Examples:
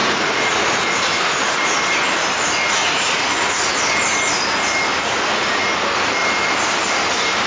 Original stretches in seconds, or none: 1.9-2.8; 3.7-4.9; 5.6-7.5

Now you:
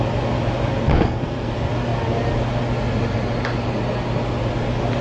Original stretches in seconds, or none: 0.0-0.9; 1.5-5.0

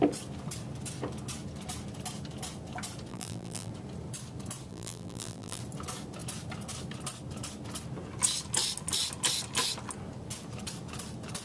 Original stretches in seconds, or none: 0.0-3.1; 3.7-4.7; 5.6-11.4

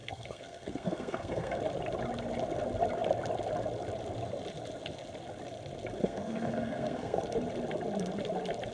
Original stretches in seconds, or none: 1.6-6.0; 7.2-8.7

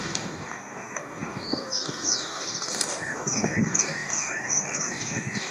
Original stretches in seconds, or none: none